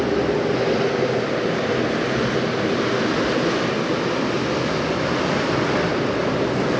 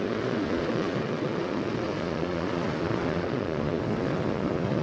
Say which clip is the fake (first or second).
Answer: second